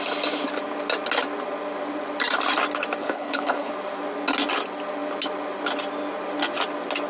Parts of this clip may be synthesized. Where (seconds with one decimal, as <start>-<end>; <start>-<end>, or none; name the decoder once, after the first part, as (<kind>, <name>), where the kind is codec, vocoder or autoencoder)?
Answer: 3.0-3.7 (codec, HILCodec)

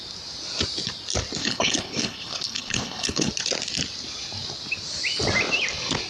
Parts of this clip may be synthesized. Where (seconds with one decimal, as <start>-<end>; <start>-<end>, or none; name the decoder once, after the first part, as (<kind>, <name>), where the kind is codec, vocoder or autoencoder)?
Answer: 1.4-3.3 (codec, HILCodec)

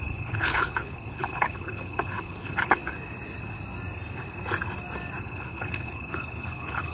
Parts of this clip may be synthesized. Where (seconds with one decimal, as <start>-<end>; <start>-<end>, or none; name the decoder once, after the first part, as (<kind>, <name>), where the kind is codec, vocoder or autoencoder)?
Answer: 0.0-2.8 (codec, HILCodec); 5.2-6.9

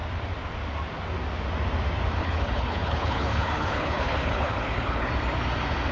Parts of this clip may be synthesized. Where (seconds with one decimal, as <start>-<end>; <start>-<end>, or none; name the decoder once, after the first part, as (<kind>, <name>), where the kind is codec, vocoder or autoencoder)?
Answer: 2.2-5.1 (codec, HILCodec)

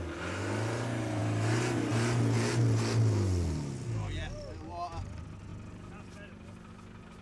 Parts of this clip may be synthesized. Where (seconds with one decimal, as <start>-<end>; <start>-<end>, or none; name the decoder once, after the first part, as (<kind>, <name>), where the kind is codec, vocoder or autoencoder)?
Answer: none

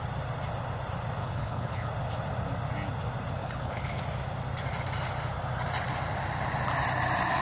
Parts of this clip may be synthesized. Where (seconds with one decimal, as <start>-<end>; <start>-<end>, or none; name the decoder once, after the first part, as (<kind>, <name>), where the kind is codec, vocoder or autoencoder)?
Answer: 1.2-1.9 (codec, HILCodec); 3.4-4.0

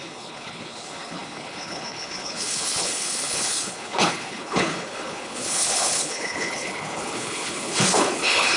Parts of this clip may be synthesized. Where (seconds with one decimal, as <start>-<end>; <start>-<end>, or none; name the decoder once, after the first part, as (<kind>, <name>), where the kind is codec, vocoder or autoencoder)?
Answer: 0.0-8.6 (codec, HILCodec)